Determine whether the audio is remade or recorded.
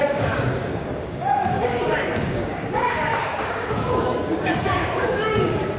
remade